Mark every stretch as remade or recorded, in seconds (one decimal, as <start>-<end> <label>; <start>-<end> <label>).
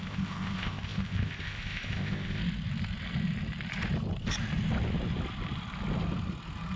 0.0-2.4 remade; 2.4-6.8 recorded